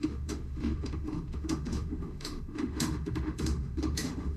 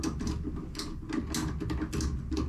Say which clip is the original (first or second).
second